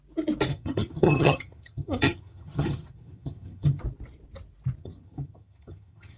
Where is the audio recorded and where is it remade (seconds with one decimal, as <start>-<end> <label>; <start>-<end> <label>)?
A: 0.0-0.5 recorded; 0.5-3.8 remade; 3.8-4.8 recorded; 4.8-6.2 remade